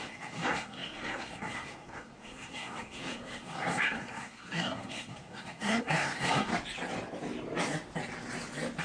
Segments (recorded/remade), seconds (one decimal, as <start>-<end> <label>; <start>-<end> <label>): 0.0-6.5 remade; 6.5-8.8 recorded